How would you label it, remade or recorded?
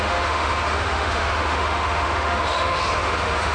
remade